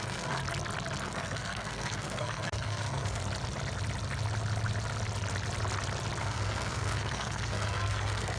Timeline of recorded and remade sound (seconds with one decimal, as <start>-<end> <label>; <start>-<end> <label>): 0.0-0.4 remade; 0.4-1.0 recorded; 1.0-3.2 remade; 3.2-6.2 recorded; 6.2-8.4 remade